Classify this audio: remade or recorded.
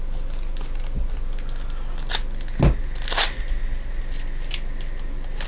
recorded